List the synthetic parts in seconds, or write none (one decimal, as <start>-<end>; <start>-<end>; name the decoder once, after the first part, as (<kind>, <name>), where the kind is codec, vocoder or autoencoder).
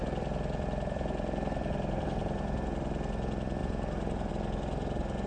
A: none